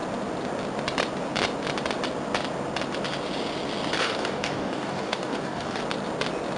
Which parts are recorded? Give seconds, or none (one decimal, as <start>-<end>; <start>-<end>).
0.0-4.0; 5.8-6.6